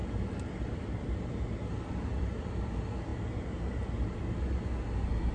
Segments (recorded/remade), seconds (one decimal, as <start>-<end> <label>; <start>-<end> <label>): 0.0-2.5 remade; 2.5-5.3 recorded